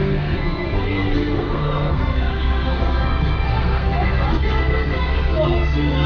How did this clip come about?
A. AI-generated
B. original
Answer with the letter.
A